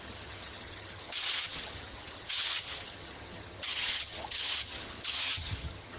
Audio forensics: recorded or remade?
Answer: remade